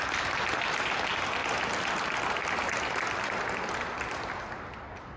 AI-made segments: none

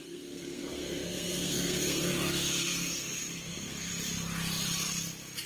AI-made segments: 0.0-3.9 (codec, SNAC)

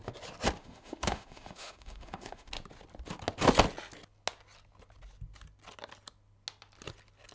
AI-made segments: 0.6-2.5 (autoencoder, DAC-VAE)

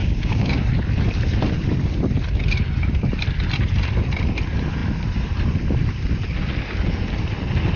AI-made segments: 0.0-0.6 (codec, DAC)

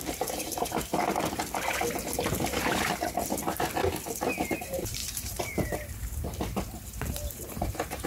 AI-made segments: 0.0-0.9 (vocoder, BigVGAN v2); 3.3-3.8; 4.5-8.1